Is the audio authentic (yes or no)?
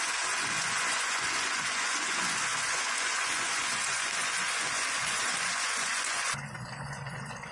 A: no